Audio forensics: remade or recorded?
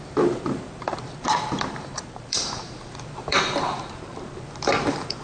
remade